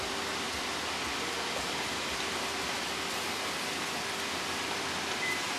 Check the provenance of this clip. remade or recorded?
remade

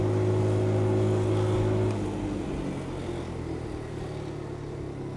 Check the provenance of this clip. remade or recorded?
recorded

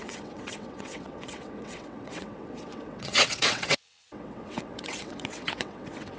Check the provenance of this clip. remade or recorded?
remade